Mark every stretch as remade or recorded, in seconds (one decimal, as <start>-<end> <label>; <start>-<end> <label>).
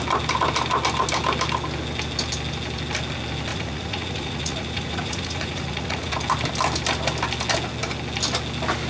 0.0-3.5 recorded; 3.5-6.1 remade; 6.1-8.9 recorded